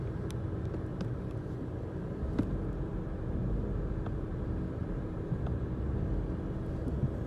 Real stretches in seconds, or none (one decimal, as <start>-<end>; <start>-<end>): 0.0-0.9; 2.2-4.8; 5.7-7.3